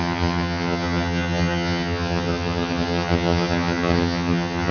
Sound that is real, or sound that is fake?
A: fake